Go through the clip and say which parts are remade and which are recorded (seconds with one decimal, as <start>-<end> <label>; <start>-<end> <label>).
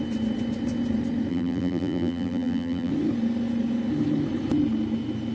0.0-1.3 recorded; 1.3-2.9 remade; 2.9-5.3 recorded